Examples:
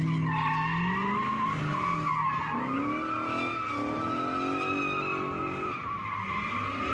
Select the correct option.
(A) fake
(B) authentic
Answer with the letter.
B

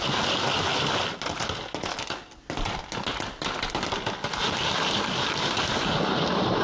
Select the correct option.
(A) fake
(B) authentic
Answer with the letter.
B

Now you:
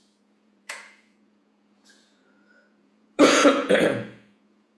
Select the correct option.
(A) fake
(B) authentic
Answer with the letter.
A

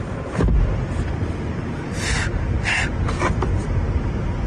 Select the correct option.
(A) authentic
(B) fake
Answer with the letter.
A